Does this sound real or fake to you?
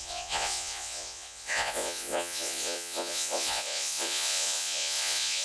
fake